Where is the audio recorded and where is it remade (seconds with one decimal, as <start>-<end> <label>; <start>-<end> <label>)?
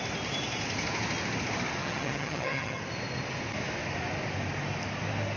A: 0.0-1.8 recorded; 1.8-2.8 remade; 2.8-5.4 recorded